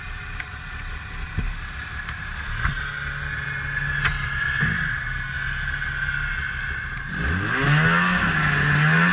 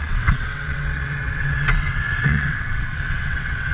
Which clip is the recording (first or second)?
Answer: first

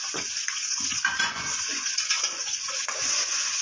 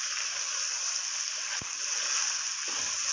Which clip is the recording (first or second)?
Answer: second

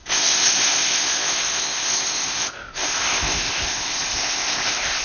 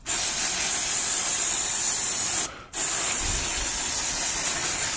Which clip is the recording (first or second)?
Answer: second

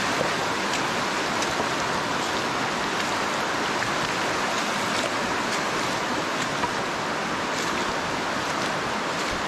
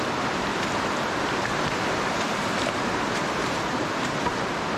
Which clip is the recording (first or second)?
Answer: first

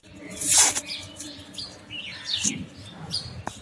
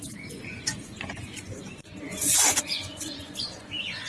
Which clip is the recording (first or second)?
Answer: first